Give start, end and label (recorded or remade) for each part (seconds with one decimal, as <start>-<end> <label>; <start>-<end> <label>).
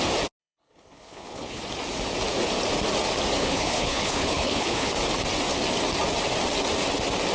0.0-0.4 recorded; 0.4-1.6 remade; 1.6-3.4 recorded; 3.4-4.9 remade; 4.9-7.3 recorded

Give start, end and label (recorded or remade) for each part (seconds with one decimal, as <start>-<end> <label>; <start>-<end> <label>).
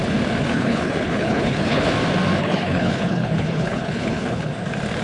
0.0-0.4 recorded; 0.4-1.9 remade; 1.9-2.4 recorded; 2.4-4.5 remade; 4.5-5.0 recorded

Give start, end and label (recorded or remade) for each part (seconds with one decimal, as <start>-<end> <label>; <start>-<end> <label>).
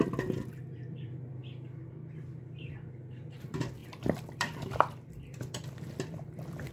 0.0-1.4 remade; 1.4-3.3 recorded; 3.3-6.7 remade